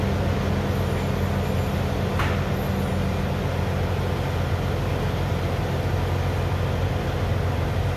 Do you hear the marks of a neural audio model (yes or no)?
no